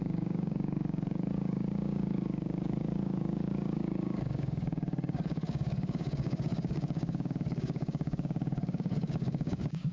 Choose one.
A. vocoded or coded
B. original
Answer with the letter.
A